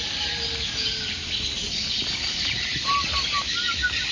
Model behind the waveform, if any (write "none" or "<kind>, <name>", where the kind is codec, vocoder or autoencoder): none